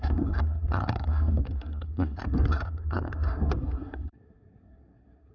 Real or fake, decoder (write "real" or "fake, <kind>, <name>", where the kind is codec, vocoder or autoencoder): fake, codec, SNAC